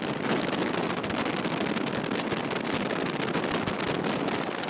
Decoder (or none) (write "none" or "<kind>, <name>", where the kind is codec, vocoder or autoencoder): none